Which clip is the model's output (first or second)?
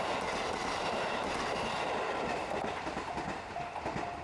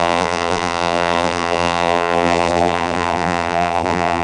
second